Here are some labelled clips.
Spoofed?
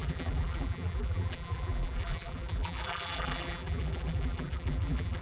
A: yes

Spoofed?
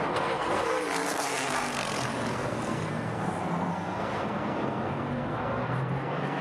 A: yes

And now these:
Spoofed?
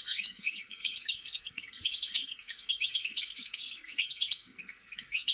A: yes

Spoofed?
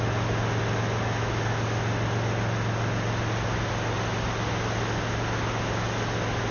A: no